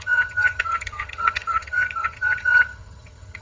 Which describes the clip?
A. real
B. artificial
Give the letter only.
B